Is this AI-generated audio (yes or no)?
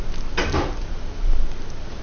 no